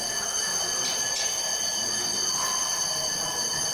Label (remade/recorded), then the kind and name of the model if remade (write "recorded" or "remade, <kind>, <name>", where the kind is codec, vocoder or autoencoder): recorded